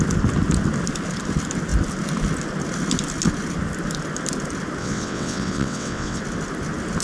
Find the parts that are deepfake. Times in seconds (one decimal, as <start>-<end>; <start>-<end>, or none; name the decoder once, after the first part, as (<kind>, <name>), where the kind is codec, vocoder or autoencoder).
4.8-6.2 (vocoder, WaveNeXt)

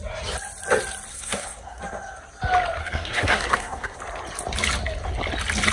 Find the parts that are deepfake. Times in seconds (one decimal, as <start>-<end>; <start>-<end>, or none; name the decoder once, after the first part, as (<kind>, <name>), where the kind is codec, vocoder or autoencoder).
1.1-1.8 (codec, SNAC); 2.8-4.0

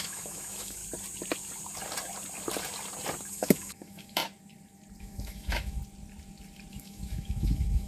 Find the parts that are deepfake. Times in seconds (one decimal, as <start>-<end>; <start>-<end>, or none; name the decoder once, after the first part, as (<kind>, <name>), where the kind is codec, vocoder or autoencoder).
0.0-0.8 (autoencoder, DAC-VAE); 3.3-4.2; 5.0-5.8; 6.7-7.9